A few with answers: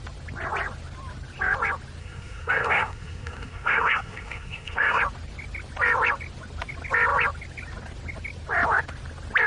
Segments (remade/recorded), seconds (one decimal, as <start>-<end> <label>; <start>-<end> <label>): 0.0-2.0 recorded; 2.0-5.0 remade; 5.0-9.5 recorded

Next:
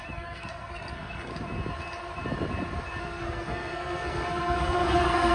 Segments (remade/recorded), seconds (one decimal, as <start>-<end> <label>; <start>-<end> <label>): 0.0-1.3 remade; 1.3-3.0 recorded; 3.0-5.3 remade

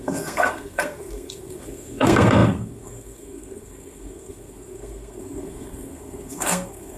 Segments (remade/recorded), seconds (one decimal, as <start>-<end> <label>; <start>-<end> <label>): 0.0-7.0 remade

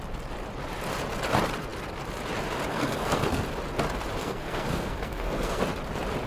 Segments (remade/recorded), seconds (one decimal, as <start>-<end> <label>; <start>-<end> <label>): 0.0-2.7 recorded; 2.7-3.4 remade; 3.4-4.2 recorded; 4.2-5.6 remade; 5.6-6.3 recorded

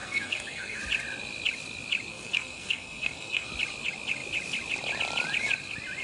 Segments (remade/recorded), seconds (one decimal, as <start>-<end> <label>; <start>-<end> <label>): 0.0-0.8 remade; 0.8-2.1 recorded; 2.1-3.5 remade; 3.5-6.0 recorded

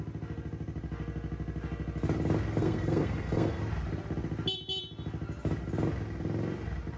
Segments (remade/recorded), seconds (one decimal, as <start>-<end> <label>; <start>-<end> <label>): 0.0-2.6 recorded; 2.6-3.6 remade; 3.6-7.0 recorded